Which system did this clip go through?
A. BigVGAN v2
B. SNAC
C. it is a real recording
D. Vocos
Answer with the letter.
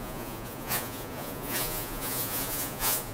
D